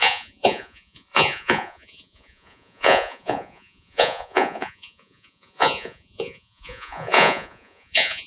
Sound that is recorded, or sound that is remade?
remade